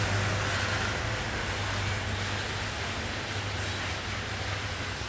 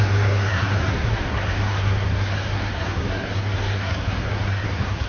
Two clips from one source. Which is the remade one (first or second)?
second